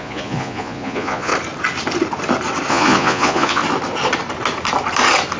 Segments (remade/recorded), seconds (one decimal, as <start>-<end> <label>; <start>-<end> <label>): 0.0-1.3 remade; 1.3-2.7 recorded; 2.7-3.6 remade; 3.6-5.4 recorded